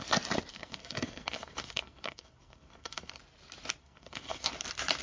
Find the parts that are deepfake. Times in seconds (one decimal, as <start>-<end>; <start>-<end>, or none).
0.5-3.2; 3.8-4.5